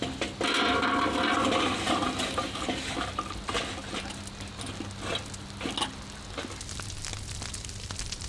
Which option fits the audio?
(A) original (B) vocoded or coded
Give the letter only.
A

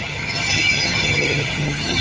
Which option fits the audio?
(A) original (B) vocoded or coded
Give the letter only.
B